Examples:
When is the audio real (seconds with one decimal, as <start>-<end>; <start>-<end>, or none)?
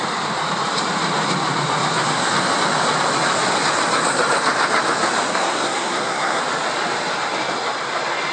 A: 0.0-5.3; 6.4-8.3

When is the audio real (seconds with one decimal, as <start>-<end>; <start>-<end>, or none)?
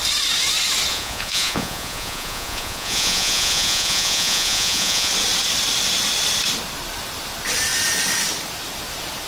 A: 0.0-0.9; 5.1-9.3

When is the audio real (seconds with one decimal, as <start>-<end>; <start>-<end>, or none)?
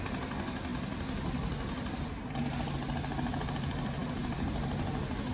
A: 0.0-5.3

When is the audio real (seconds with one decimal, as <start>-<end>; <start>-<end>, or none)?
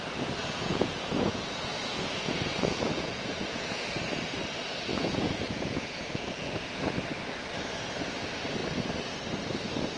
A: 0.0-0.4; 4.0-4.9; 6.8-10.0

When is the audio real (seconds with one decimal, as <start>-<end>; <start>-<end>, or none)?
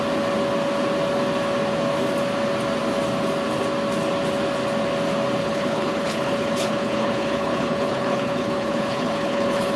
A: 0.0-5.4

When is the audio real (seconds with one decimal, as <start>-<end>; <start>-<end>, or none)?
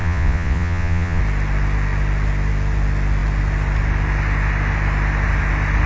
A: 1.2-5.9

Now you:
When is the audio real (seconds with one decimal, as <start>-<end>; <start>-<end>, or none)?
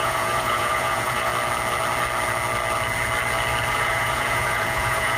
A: 1.3-3.7